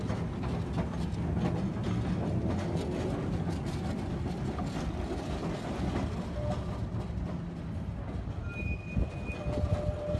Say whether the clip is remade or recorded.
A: recorded